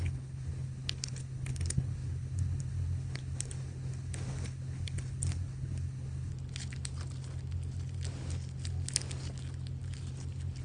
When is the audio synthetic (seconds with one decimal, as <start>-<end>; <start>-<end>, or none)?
0.0-6.3